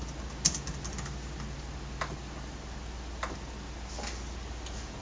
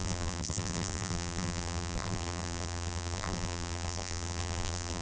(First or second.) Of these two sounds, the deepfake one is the second